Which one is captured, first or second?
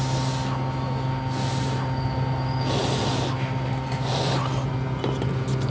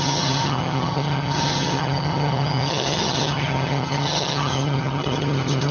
first